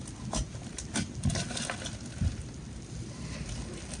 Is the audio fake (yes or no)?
no